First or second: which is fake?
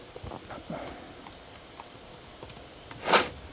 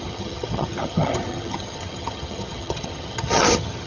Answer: second